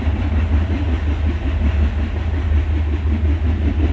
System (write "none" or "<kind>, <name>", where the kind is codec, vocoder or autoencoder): none